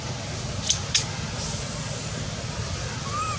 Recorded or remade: recorded